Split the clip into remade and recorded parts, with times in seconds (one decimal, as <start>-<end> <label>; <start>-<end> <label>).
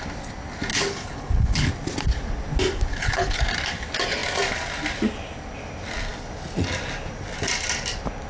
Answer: 0.0-0.7 recorded; 0.7-1.7 remade; 1.7-2.9 recorded; 2.9-3.4 remade; 3.4-8.3 recorded